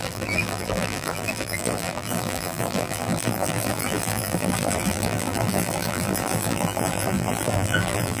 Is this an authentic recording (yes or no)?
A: no